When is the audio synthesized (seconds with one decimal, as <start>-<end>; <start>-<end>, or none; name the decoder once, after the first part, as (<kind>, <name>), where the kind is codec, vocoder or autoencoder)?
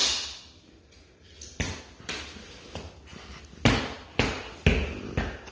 none